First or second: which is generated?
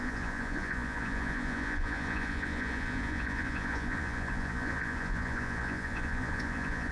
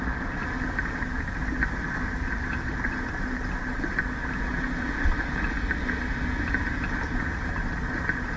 first